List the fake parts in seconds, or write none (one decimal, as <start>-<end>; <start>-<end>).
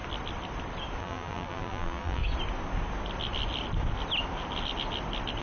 1.0-2.2